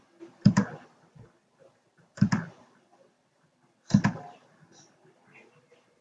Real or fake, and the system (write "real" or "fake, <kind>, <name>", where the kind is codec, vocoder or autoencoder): real